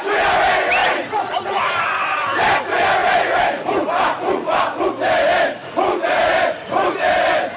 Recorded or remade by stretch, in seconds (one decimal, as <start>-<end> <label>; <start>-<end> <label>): 0.0-0.8 recorded; 0.8-1.8 remade; 1.8-3.0 recorded; 3.0-4.9 remade; 4.9-5.6 recorded; 5.6-7.1 remade; 7.1-7.6 recorded